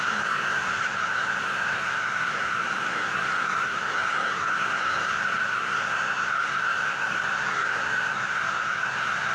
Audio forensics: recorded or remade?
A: remade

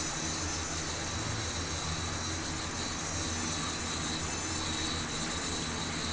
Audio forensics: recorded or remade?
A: recorded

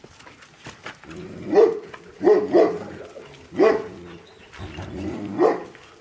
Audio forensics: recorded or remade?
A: recorded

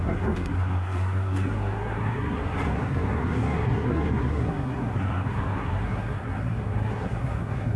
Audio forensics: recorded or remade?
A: remade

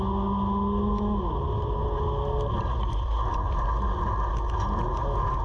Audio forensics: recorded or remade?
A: recorded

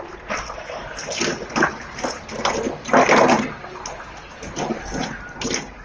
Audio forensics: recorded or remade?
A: recorded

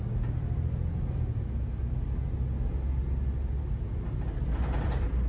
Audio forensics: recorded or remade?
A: recorded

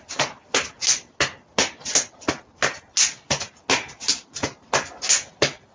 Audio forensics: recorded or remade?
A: recorded